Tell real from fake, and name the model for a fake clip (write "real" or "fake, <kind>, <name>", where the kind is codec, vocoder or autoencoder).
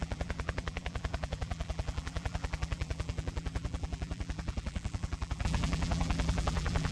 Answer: fake, vocoder, BigVGAN v2